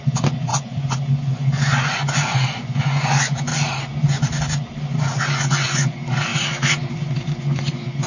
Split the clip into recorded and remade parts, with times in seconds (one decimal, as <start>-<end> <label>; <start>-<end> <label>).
0.0-3.5 remade; 3.5-5.3 recorded; 5.3-6.3 remade; 6.3-7.4 recorded; 7.4-8.1 remade